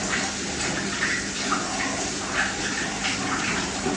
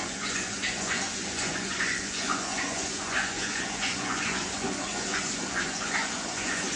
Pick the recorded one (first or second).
first